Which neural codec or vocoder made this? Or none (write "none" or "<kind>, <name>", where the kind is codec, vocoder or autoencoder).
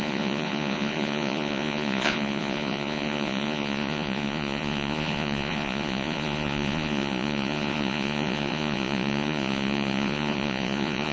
vocoder, Vocos